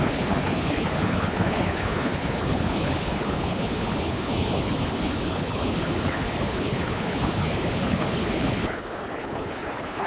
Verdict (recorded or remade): remade